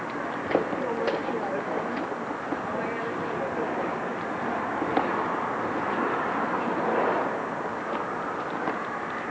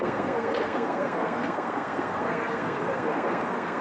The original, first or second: first